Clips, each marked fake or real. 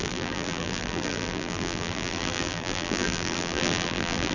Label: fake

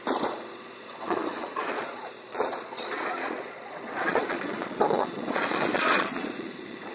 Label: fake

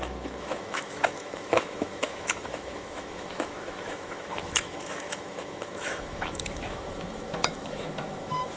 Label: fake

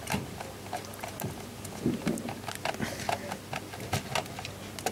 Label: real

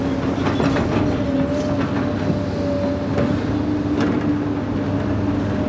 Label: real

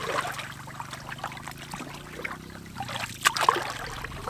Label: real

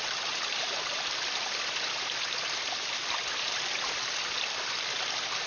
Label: real